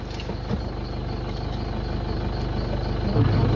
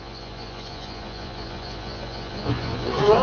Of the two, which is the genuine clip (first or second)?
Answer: first